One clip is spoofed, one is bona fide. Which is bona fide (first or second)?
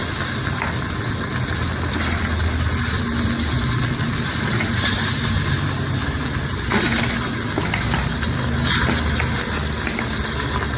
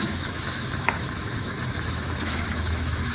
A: first